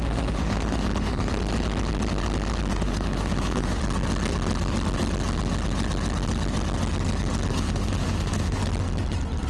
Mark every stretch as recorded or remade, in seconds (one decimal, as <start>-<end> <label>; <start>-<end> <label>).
0.0-1.3 remade; 1.3-2.7 recorded; 2.7-3.8 remade; 3.8-7.5 recorded; 7.5-8.6 remade; 8.6-9.5 recorded